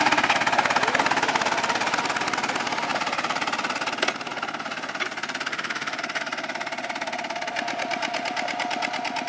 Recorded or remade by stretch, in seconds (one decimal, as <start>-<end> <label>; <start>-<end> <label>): 0.0-5.5 recorded; 5.5-6.0 remade; 6.0-9.3 recorded